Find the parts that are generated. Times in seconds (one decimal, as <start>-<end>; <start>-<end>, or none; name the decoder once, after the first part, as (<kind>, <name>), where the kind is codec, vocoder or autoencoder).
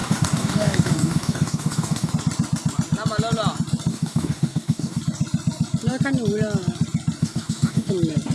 0.0-2.1 (codec, DAC); 3.9-5.0; 7.2-7.9